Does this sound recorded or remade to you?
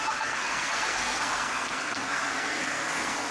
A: remade